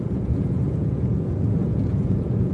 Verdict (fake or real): fake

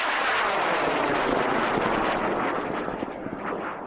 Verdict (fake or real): real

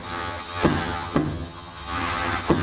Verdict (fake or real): fake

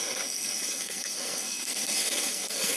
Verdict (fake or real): fake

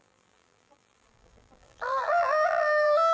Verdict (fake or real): fake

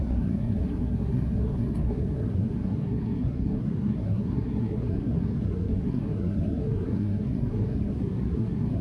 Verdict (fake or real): fake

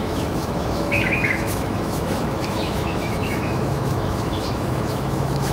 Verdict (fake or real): fake